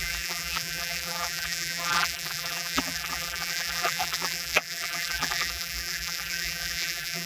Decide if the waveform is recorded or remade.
remade